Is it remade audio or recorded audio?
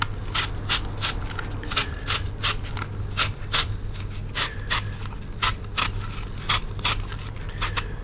recorded